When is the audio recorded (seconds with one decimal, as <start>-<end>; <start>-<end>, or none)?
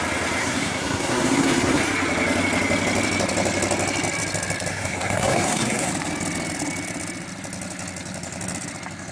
0.0-0.4; 1.8-4.7; 5.9-9.1